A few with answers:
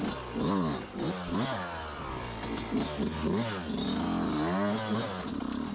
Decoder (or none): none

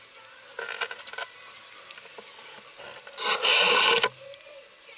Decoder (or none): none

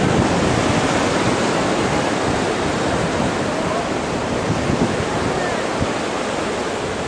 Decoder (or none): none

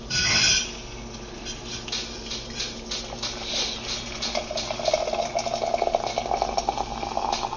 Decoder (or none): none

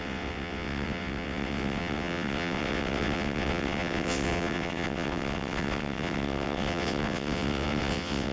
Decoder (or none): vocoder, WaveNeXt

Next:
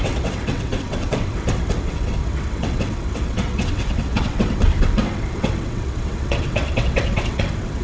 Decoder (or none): vocoder, WaveNeXt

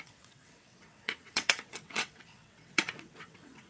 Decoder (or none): vocoder, WaveNeXt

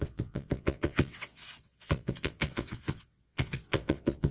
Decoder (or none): vocoder, WaveNeXt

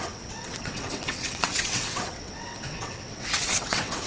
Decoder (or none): vocoder, WaveNeXt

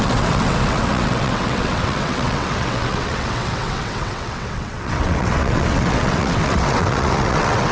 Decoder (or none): vocoder, WaveNeXt